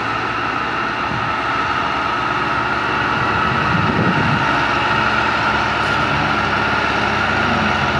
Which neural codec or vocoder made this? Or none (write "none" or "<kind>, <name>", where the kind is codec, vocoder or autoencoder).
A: none